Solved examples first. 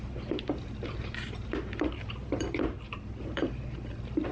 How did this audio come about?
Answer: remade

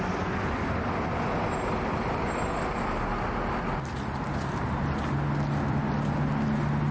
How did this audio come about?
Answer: recorded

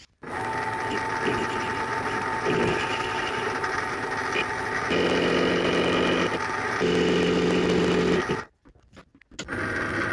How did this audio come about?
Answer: recorded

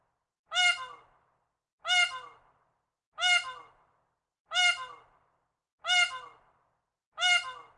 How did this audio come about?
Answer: recorded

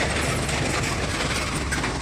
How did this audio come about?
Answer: recorded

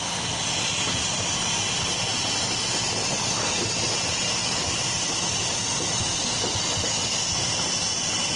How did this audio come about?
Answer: recorded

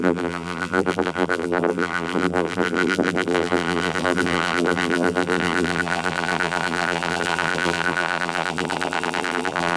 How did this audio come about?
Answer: remade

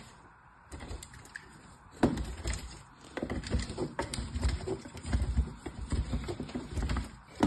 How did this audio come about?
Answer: remade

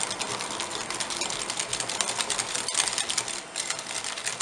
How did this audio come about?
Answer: recorded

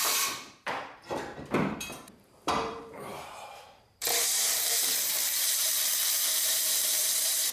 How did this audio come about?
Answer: remade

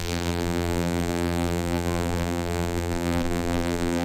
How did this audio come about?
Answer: remade